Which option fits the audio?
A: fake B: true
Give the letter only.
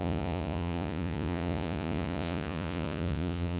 A